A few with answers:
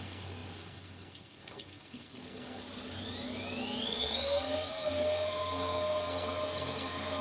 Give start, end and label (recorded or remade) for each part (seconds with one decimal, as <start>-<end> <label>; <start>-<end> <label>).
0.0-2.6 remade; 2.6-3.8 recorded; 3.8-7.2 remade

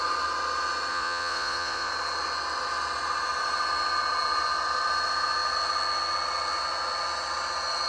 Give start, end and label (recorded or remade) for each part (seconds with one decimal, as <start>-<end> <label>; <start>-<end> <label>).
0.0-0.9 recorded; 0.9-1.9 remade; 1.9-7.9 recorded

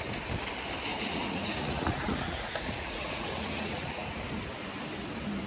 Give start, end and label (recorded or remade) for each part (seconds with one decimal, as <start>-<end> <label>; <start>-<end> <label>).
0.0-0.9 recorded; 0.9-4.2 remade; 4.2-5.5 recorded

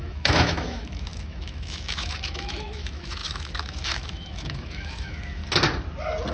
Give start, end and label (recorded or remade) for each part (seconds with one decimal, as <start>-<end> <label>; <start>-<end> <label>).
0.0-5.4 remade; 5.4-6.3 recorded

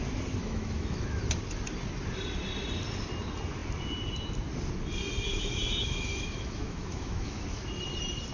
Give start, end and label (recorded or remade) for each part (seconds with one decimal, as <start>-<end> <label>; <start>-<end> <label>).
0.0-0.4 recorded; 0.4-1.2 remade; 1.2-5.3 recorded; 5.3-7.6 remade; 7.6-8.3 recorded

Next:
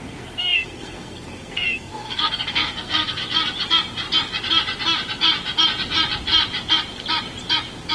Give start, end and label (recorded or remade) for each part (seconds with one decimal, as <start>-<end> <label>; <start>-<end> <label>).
0.0-3.2 remade; 3.2-7.9 recorded

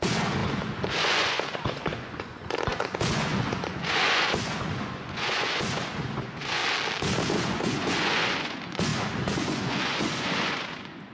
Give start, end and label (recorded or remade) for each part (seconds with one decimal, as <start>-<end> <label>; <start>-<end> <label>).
0.0-6.6 remade; 6.6-7.3 recorded; 7.3-11.1 remade

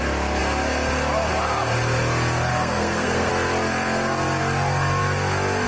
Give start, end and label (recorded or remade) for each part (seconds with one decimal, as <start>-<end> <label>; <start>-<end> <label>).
0.0-2.5 recorded; 2.5-3.3 remade; 3.3-5.7 recorded